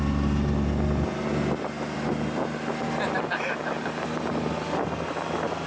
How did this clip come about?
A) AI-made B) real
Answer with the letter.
B